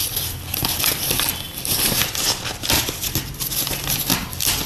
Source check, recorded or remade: recorded